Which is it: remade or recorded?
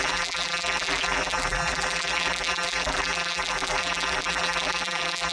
remade